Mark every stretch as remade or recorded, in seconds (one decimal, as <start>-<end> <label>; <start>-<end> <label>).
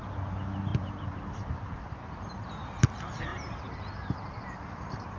0.0-5.2 remade